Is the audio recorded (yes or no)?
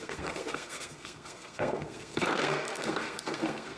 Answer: no